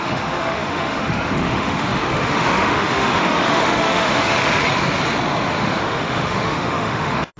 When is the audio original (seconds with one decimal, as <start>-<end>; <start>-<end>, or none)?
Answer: 4.4-5.5